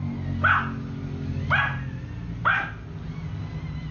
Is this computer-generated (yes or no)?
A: no